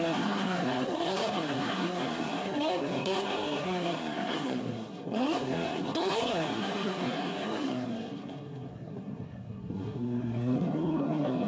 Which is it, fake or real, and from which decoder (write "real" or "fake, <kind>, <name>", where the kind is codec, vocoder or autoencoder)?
fake, codec, SNAC